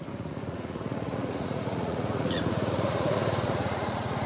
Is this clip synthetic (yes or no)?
yes